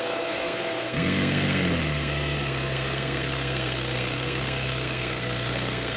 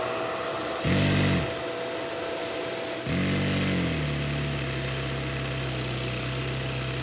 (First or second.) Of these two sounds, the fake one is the first